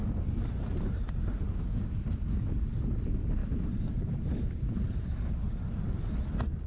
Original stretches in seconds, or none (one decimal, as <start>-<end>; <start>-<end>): 1.8-3.4; 5.0-5.4; 6.1-6.7